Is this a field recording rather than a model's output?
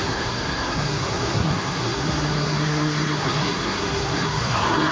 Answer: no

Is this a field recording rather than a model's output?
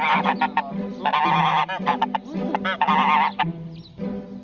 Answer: yes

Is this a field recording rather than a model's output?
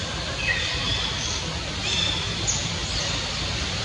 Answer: yes